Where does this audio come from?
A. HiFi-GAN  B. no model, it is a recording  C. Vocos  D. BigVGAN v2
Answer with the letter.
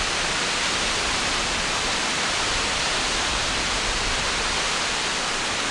B